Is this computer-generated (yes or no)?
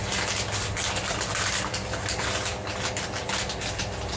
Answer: no